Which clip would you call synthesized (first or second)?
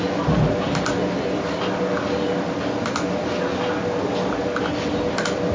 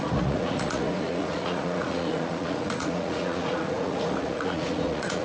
second